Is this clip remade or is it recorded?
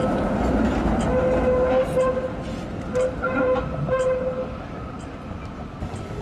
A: recorded